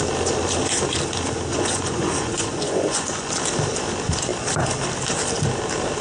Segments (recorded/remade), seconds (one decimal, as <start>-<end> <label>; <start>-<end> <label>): 0.0-1.5 recorded; 1.5-3.3 remade; 3.3-6.0 recorded

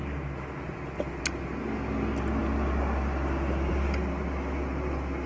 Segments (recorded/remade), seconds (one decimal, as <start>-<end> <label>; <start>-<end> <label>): 0.0-5.3 recorded

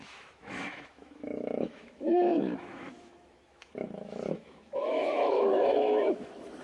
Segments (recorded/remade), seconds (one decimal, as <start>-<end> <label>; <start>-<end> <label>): 0.0-6.6 remade

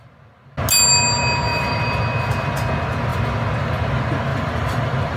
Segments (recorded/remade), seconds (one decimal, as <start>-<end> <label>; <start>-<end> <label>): 0.0-1.5 recorded; 1.5-2.0 remade; 2.0-4.3 recorded; 4.3-5.2 remade